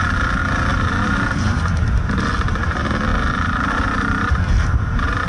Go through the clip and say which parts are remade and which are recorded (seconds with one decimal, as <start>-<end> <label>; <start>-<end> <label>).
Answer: 0.0-0.7 recorded; 0.7-2.2 remade; 2.2-3.1 recorded; 3.1-5.3 remade